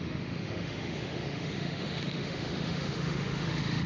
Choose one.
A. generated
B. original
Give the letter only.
A